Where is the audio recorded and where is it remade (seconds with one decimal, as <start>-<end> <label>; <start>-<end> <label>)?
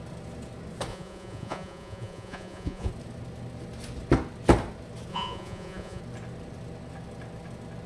0.0-0.9 recorded; 0.9-2.9 remade; 2.9-5.1 recorded; 5.1-6.0 remade; 6.0-7.9 recorded